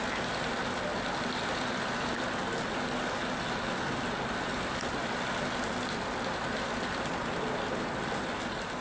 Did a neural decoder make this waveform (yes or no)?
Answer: no